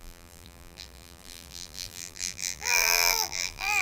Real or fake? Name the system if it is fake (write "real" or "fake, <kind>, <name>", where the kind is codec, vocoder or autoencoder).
fake, vocoder, BigVGAN v2